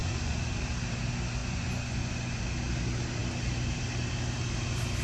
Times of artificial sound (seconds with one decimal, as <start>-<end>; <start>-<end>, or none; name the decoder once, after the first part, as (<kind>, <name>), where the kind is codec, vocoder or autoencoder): 0.0-0.6 (vocoder, Vocos); 1.4-2.4